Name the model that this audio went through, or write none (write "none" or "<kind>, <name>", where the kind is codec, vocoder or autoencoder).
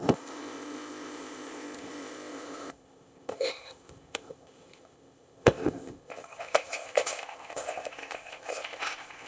codec, ZipCodec